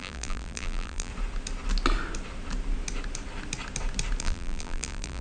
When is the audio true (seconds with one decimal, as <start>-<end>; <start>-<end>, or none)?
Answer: 1.1-4.2